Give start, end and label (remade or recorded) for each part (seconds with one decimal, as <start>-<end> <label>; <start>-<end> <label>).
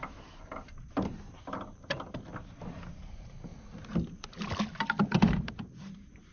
0.0-2.3 remade; 2.3-3.0 recorded; 3.0-3.5 remade; 3.5-5.0 recorded; 5.0-6.3 remade